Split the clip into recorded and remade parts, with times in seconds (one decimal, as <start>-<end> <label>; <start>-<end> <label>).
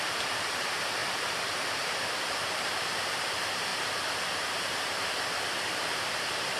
0.0-3.7 remade; 3.7-5.7 recorded; 5.7-6.6 remade